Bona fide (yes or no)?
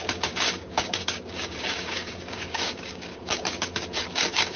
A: no